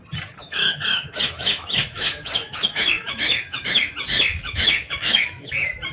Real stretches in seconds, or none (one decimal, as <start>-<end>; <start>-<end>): 0.0-0.4; 3.9-4.3; 5.5-5.9